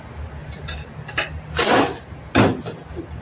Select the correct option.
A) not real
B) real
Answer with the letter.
B